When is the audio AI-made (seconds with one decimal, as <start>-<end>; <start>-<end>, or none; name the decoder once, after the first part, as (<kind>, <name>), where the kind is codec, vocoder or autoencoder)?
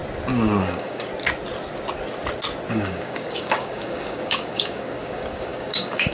0.6-1.1 (codec, DAC); 2.7-6.1